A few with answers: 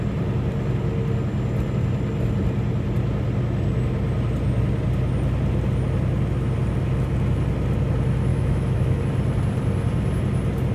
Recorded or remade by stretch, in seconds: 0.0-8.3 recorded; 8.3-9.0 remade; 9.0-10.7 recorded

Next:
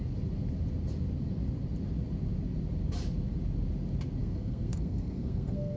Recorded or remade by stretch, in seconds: 0.0-4.2 recorded; 4.2-5.8 remade

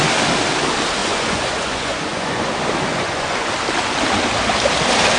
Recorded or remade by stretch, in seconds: 0.0-1.0 recorded; 1.0-2.5 remade; 2.5-2.9 recorded; 2.9-3.5 remade; 3.5-5.2 recorded

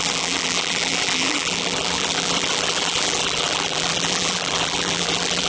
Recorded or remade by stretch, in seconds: 0.0-5.5 remade

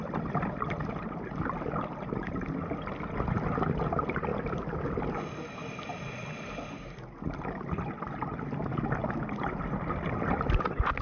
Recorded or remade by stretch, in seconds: 0.0-11.0 recorded

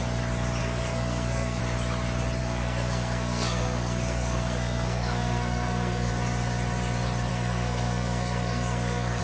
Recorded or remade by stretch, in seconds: 0.0-0.6 recorded; 0.6-1.6 remade; 1.6-2.4 recorded; 2.4-6.1 remade; 6.1-7.3 recorded; 7.3-9.2 remade

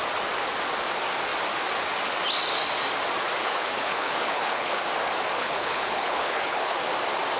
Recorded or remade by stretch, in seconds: 0.0-3.4 recorded; 3.4-4.8 remade; 4.8-5.4 recorded; 5.4-6.8 remade; 6.8-7.4 recorded